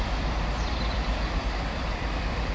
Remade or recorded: remade